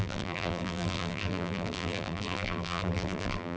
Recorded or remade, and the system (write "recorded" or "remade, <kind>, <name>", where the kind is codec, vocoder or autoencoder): remade, vocoder, BigVGAN v2